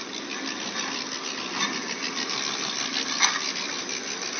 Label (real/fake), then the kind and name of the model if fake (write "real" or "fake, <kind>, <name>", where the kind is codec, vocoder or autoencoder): real